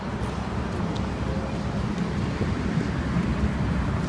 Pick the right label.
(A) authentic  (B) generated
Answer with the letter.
A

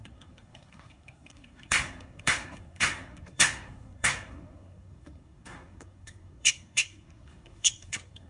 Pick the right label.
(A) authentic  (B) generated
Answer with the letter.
B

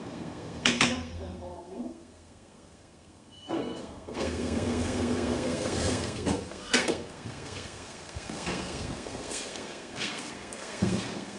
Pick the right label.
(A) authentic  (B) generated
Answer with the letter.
B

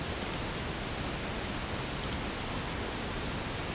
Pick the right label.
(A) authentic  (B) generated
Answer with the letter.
A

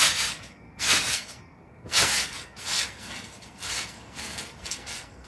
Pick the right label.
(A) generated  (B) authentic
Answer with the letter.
A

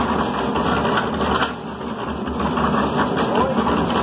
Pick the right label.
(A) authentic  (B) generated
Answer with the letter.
A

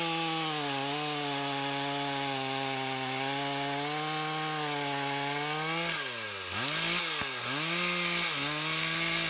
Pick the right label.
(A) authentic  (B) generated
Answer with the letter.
A